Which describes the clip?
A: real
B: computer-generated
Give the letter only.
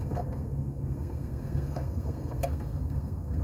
B